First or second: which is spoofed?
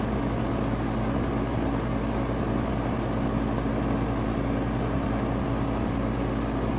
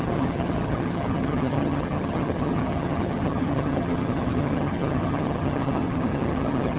second